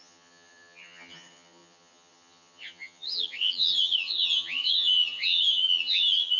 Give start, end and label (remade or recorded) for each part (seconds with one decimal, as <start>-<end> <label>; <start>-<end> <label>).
0.0-6.4 remade